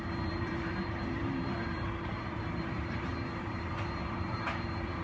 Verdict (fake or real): fake